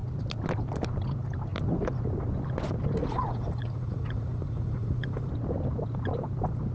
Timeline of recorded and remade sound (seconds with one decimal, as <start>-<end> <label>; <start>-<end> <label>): 0.0-3.0 recorded; 3.0-5.3 remade; 5.3-6.7 recorded